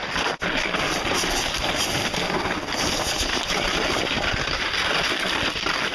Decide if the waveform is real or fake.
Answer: real